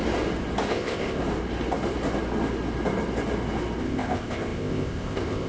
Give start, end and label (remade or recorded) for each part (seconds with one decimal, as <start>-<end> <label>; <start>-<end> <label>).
0.0-0.7 recorded; 0.7-1.2 remade; 1.2-3.8 recorded; 3.8-5.5 remade